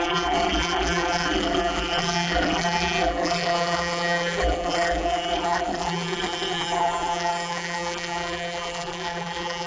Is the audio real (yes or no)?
no